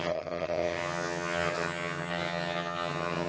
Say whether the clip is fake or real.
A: fake